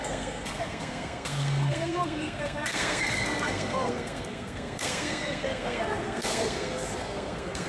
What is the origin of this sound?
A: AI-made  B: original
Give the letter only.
A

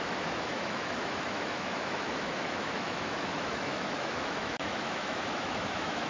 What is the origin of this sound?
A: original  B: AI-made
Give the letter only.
B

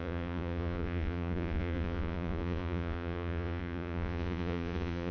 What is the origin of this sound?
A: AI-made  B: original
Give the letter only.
A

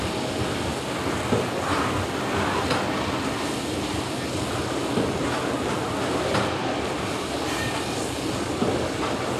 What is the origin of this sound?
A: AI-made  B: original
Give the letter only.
B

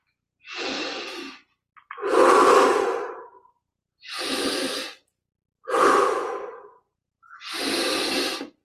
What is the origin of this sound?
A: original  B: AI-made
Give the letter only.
A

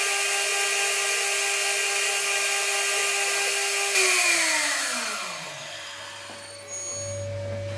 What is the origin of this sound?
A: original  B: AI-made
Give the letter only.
A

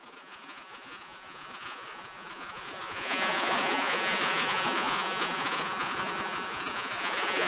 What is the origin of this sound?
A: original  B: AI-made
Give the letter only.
B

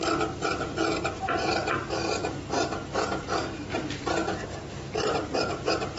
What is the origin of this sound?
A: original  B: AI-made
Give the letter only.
A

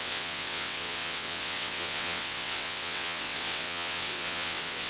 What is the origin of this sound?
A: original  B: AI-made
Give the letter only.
B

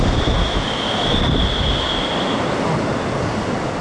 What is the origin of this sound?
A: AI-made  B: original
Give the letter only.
B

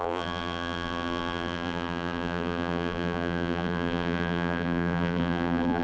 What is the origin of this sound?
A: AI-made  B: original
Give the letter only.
A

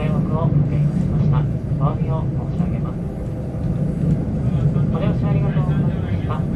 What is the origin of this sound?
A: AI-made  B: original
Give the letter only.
B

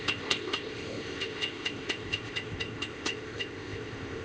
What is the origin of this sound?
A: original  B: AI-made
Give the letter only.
B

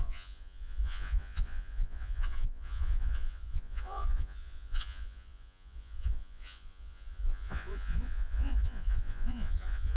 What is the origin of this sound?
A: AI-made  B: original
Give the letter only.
A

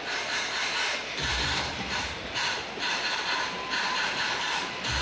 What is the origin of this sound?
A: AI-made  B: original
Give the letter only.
A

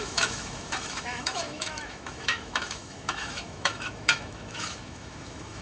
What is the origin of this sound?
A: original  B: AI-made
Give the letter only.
B